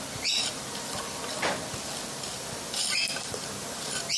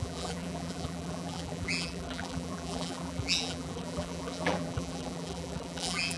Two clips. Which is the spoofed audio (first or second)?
second